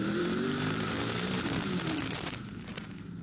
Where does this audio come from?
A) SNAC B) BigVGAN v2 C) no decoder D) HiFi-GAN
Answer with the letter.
B